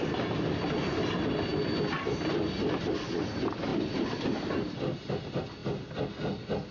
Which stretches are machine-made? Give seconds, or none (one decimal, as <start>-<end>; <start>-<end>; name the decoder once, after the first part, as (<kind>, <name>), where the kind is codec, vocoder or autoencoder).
none